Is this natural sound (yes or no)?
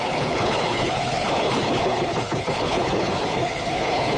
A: no